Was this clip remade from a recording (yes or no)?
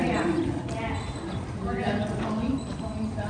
no